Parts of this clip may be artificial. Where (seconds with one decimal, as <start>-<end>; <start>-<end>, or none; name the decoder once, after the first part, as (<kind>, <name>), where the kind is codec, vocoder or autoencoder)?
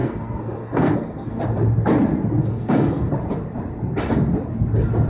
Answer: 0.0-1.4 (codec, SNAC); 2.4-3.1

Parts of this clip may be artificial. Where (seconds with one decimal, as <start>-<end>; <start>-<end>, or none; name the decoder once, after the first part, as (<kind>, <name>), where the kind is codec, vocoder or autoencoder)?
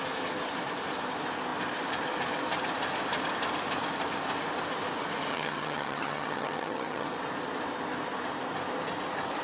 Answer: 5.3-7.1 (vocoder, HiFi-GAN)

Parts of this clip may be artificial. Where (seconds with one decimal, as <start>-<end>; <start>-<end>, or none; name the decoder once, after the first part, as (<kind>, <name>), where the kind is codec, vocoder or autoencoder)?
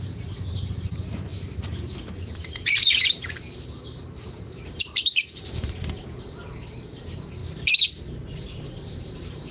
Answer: 0.0-7.4 (vocoder, BigVGAN v2); 8.3-9.5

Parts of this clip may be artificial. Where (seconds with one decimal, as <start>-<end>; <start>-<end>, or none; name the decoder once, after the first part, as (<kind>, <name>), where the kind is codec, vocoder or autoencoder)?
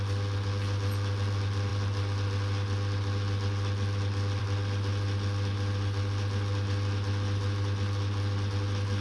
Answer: none